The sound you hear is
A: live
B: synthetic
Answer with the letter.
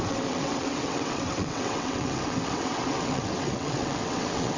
B